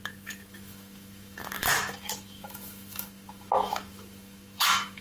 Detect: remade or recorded remade